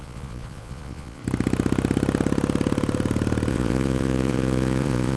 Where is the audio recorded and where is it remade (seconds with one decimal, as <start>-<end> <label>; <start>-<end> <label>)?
0.0-1.2 remade; 1.2-3.5 recorded; 3.5-5.2 remade